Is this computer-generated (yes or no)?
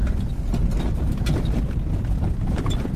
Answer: no